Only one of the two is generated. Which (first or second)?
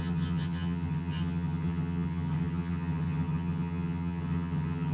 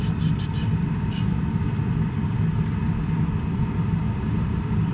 first